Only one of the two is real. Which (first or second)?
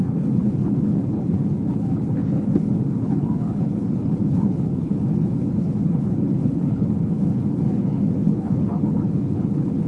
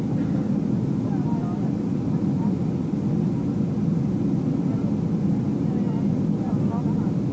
second